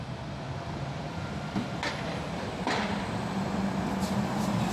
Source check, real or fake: fake